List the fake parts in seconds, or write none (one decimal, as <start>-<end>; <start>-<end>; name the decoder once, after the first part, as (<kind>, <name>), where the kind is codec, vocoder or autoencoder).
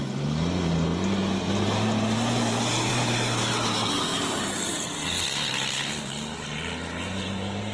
none